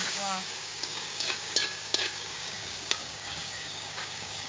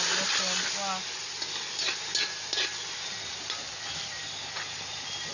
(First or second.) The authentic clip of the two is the second